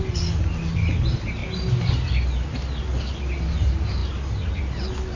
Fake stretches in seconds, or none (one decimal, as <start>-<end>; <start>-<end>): none